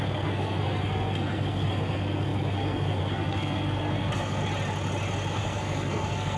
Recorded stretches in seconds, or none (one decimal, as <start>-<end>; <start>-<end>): 4.4-5.3